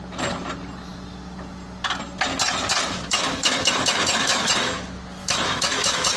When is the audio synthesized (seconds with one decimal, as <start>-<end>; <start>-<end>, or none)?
3.1-4.5; 5.2-6.2